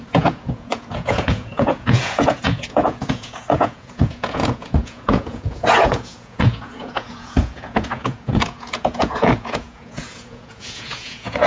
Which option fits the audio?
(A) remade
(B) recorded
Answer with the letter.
A